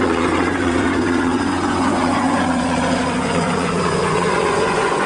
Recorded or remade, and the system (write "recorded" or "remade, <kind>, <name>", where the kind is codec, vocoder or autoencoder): remade, vocoder, Vocos